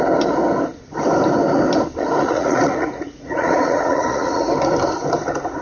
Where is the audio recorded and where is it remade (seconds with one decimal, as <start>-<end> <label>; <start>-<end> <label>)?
0.0-2.2 recorded; 2.2-4.5 remade; 4.5-5.6 recorded